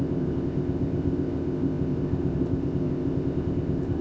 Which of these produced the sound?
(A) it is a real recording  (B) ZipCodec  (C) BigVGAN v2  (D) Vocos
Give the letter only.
B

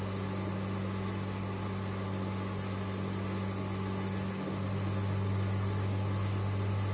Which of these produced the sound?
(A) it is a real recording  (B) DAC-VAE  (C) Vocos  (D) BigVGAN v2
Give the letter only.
A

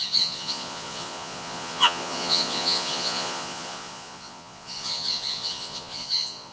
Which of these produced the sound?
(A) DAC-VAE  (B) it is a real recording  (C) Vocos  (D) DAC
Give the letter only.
C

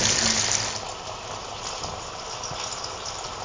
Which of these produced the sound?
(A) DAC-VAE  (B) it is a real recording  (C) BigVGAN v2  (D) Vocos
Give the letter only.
B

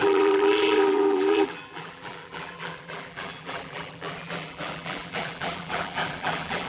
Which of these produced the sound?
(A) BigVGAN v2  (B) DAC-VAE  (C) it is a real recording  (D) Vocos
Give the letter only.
A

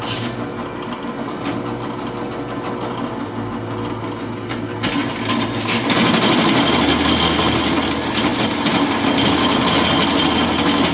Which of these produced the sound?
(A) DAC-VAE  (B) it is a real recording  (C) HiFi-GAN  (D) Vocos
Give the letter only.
B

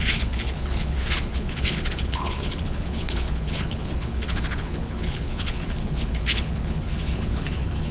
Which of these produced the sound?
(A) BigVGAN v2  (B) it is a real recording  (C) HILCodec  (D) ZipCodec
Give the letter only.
C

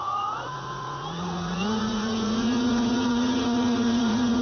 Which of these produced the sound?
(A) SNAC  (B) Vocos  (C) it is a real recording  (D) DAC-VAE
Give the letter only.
B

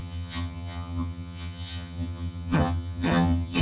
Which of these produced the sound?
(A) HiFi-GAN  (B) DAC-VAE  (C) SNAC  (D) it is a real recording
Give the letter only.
A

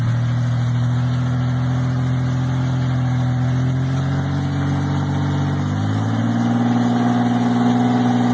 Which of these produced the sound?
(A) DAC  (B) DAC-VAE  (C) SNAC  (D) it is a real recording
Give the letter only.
D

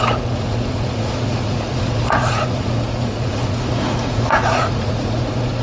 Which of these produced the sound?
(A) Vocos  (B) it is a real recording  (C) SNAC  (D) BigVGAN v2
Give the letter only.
A